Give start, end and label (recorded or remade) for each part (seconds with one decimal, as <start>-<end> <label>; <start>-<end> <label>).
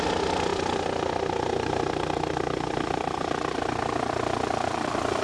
0.0-5.2 recorded